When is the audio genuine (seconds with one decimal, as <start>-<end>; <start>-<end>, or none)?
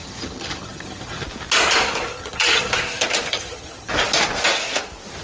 1.2-2.2; 2.7-3.3; 3.9-5.2